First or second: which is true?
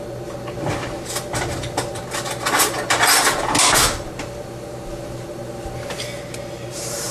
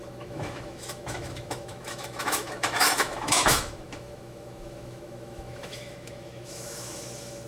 first